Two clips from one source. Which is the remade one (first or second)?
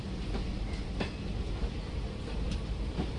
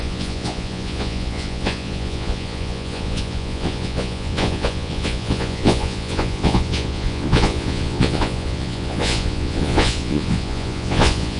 second